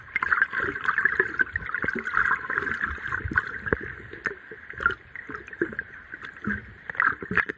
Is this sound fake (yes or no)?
no